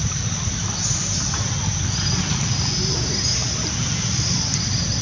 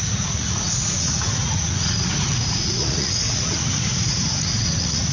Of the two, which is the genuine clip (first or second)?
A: first